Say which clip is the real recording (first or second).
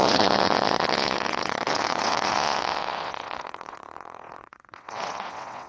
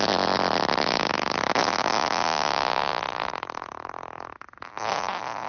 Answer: second